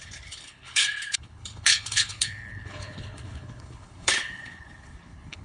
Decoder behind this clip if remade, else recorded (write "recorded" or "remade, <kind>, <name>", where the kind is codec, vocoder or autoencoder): remade, codec, HILCodec